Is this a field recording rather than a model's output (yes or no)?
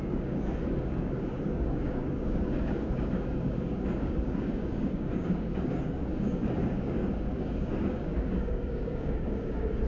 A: no